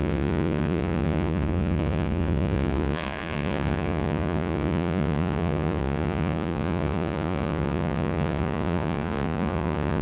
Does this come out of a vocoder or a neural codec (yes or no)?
yes